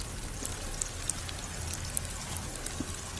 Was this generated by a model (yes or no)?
no